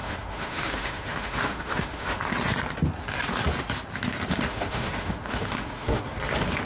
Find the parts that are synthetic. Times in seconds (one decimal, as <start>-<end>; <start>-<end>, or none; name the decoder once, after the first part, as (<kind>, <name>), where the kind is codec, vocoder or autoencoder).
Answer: 0.0-2.2 (autoencoder, DAC-VAE); 4.5-6.0